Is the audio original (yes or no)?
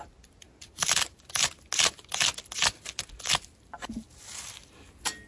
yes